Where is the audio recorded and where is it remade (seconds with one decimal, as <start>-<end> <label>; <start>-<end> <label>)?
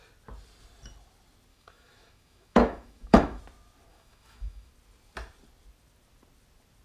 0.0-1.5 recorded; 1.5-3.4 remade; 3.4-3.9 recorded; 3.9-4.7 remade; 4.7-6.8 recorded